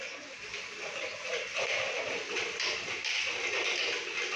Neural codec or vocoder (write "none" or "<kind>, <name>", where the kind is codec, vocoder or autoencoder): none